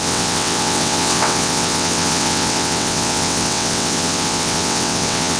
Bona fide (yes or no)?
no